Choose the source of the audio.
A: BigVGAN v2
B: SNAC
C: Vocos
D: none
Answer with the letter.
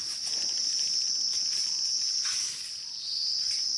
D